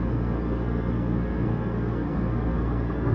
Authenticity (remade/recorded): remade